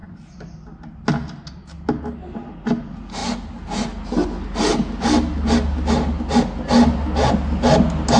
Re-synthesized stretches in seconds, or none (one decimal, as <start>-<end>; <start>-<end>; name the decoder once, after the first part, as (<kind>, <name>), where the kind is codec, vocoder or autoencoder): none